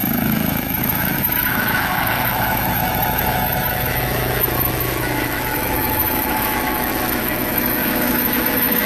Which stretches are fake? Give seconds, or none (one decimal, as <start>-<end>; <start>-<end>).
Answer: 0.0-8.9